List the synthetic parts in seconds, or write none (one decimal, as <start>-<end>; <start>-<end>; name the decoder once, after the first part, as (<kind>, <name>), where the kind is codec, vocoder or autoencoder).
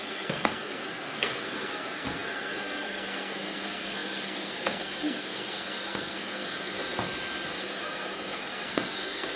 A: 0.0-6.8 (codec, SNAC); 7.6-9.4